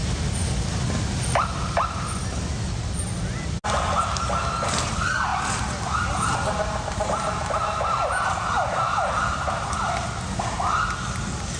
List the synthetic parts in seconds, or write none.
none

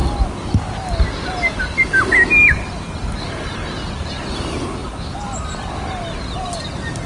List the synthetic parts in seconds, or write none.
none

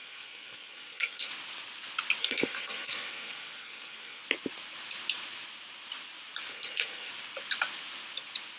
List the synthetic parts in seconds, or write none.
0.0-1.3; 2.2-4.2; 6.5-7.1

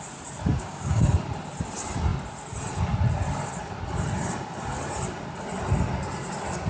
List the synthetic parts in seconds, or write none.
0.5-1.0

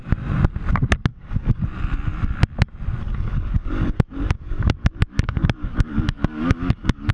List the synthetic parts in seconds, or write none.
1.1-1.6; 3.0-7.1

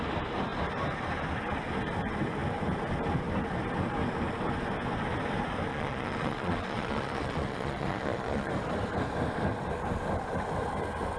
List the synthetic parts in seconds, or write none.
5.7-8.5

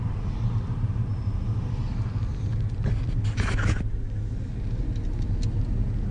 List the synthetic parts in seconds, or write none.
none